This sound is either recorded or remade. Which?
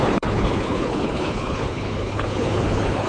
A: remade